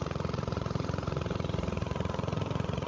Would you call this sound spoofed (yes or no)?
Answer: yes